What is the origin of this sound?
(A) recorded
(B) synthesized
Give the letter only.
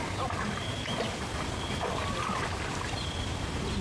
A